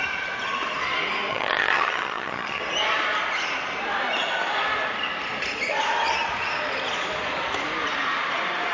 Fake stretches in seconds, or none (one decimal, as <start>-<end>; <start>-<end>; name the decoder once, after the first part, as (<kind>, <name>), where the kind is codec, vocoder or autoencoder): 1.3-2.6 (vocoder, HiFi-GAN)